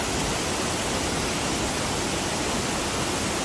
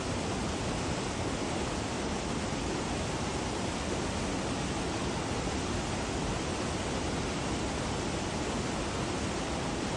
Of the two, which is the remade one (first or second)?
first